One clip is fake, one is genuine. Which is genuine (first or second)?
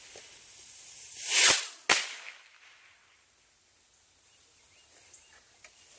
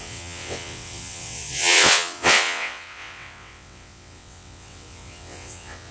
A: first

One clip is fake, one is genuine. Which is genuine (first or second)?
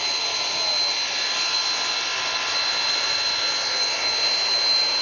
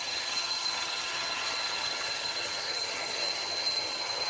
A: first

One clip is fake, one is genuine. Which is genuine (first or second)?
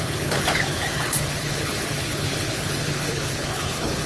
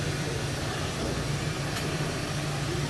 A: second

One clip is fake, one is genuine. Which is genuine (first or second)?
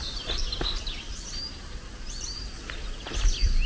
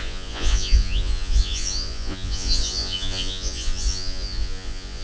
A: first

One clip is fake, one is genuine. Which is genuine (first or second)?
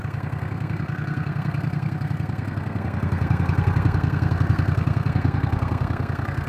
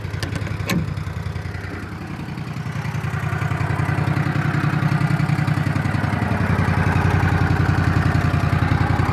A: second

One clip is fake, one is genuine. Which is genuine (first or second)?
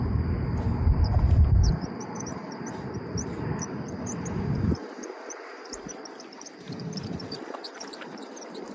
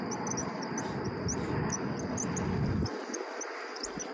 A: second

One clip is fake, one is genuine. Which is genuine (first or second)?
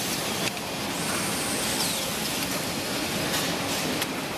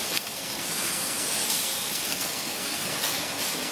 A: first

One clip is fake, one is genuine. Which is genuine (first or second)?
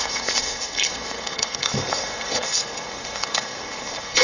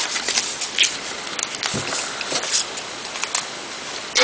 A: second